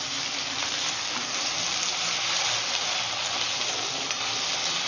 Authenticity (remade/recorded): recorded